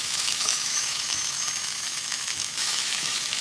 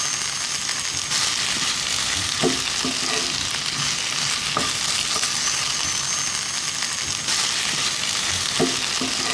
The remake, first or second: first